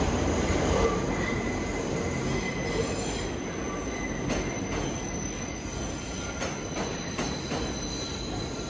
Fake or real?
real